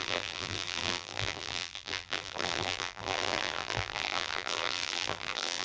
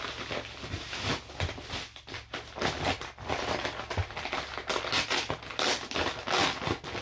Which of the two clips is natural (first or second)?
second